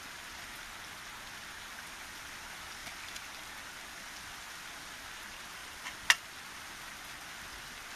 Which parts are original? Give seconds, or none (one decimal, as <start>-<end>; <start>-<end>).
0.0-8.0